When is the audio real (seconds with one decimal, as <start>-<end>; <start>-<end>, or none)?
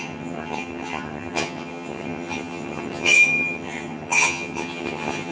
none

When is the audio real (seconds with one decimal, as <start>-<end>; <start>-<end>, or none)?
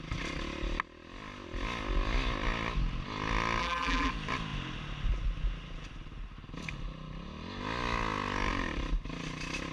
0.0-3.6; 4.1-9.7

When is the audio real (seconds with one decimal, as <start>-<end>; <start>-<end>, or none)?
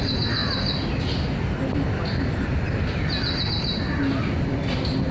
0.0-5.1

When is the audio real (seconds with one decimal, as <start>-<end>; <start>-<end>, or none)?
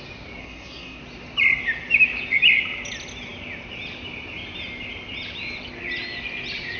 0.0-0.4; 1.0-6.8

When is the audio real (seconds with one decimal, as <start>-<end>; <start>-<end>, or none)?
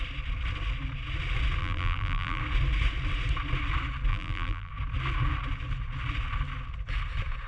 0.0-1.6; 2.4-4.1; 4.7-7.5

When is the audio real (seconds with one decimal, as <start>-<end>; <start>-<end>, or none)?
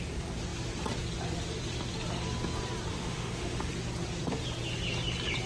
0.0-2.9; 3.7-5.5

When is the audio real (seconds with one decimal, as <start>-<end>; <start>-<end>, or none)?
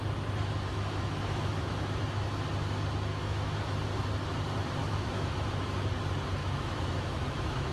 0.0-0.7; 2.0-3.1; 3.6-4.8; 5.6-6.4